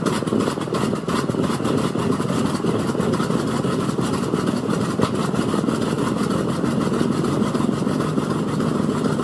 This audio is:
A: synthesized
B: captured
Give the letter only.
B